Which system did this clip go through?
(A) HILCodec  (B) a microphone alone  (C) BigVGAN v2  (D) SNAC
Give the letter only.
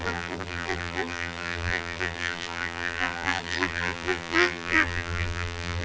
C